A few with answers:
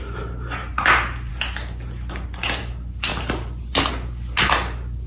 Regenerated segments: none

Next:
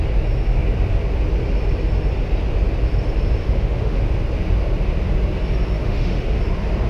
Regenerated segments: 3.4-4.0; 5.8-6.4

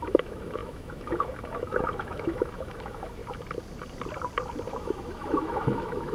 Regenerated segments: 0.0-3.2; 4.7-6.1

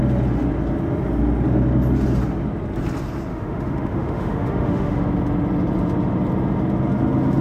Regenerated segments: 3.3-5.0

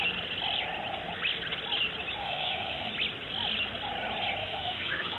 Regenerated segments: 2.2-2.9; 4.4-5.2

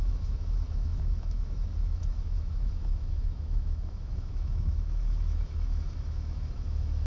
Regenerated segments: 0.0-7.1

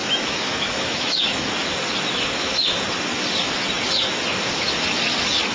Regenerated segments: 0.0-1.5